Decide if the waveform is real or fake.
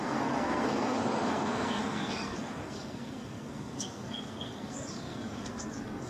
fake